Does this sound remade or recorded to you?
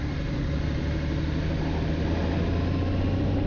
recorded